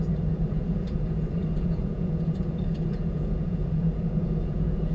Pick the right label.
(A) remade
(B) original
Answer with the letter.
A